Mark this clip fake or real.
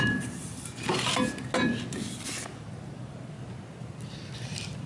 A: real